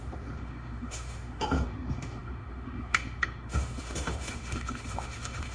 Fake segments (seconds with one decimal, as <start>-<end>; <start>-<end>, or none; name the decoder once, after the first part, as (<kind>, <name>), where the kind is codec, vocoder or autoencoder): 0.0-5.5 (autoencoder, DAC-VAE)

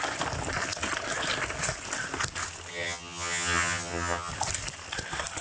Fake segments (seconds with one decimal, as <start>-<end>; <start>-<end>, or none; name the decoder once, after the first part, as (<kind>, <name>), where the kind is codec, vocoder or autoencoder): 2.7-4.3 (vocoder, HiFi-GAN)

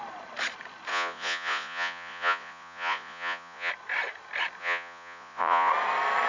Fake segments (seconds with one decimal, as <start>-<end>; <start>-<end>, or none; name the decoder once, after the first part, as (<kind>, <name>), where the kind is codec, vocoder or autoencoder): 0.9-3.7 (vocoder, Vocos); 4.6-5.7

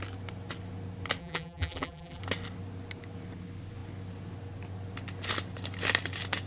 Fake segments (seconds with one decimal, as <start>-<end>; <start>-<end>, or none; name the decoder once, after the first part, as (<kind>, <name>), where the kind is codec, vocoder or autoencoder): 1.2-2.2 (vocoder, BigVGAN v2)

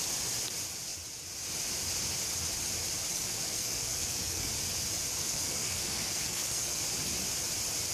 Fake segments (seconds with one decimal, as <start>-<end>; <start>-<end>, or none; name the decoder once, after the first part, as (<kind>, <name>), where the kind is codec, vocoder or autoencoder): 3.1-4.5 (codec, SNAC); 5.2-6.8

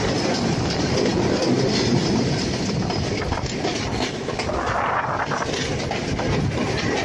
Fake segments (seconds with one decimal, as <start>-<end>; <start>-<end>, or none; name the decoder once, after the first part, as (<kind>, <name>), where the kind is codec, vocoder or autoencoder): none

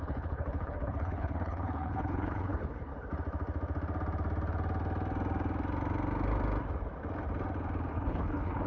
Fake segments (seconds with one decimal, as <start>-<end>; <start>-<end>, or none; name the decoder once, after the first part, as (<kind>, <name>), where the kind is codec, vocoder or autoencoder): 0.0-2.9 (codec, HILCodec); 7.9-8.7